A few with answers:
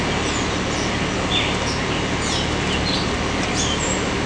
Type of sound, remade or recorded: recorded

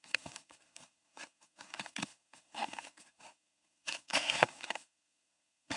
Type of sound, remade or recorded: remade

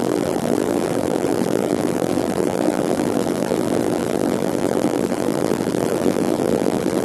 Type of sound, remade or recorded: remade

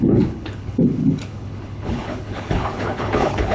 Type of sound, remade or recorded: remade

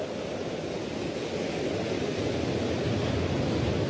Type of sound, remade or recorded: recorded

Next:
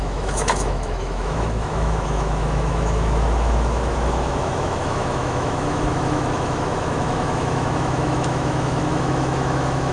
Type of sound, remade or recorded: remade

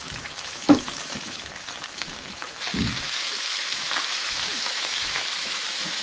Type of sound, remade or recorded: remade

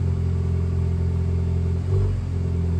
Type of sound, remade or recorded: recorded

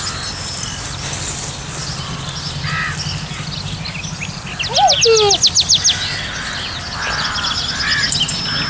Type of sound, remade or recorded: recorded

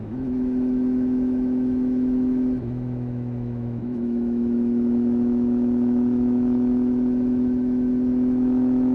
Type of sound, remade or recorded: remade